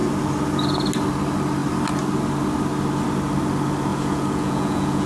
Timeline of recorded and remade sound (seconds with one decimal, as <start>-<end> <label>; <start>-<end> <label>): 0.0-3.9 recorded; 3.9-5.1 remade

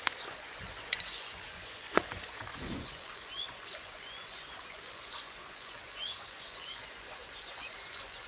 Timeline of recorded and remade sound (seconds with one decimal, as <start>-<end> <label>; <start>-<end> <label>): 0.0-8.3 remade

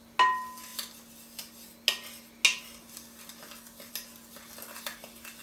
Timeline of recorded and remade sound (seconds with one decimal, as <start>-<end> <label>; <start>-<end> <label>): 0.0-5.4 recorded

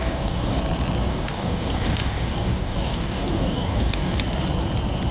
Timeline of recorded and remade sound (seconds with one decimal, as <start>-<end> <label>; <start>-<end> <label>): 0.0-0.6 remade; 0.6-1.1 recorded; 1.1-4.2 remade; 4.2-5.1 recorded

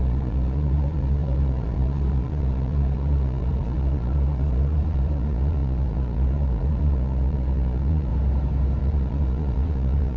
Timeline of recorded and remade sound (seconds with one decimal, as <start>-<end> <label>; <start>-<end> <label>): 0.0-8.1 remade; 8.1-8.8 recorded; 8.8-10.2 remade

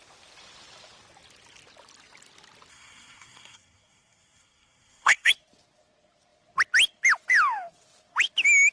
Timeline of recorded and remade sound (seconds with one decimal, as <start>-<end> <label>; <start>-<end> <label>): 0.0-2.7 recorded; 2.7-5.3 remade; 5.3-8.7 recorded

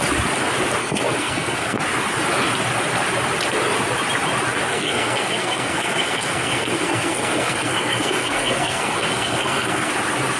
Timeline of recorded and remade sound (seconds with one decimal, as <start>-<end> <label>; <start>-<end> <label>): 0.0-0.8 recorded; 0.8-1.8 remade; 1.8-4.7 recorded; 4.7-9.9 remade; 9.9-10.4 recorded

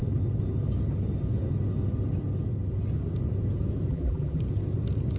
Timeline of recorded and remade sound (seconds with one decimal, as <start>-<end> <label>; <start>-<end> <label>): 0.0-3.9 recorded; 3.9-4.4 remade; 4.4-5.2 recorded